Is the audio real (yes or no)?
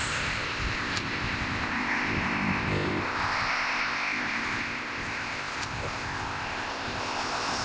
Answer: no